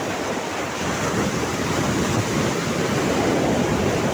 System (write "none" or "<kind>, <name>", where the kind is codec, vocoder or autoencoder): none